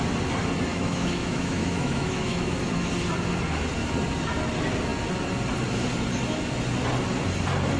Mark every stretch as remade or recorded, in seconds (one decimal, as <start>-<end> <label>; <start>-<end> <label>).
0.0-0.7 recorded; 0.7-2.9 remade; 2.9-7.8 recorded